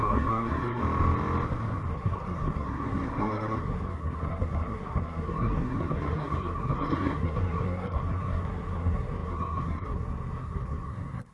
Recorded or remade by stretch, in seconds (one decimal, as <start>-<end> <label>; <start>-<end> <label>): 0.0-0.8 remade; 0.8-1.9 recorded; 1.9-11.3 remade